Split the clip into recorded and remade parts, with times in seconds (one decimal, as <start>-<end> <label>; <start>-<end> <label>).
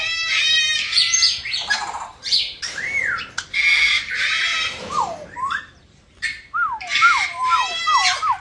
0.0-8.4 remade